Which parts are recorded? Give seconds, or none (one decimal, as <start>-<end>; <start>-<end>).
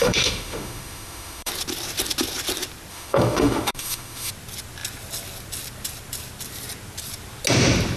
1.5-2.9; 4.3-8.0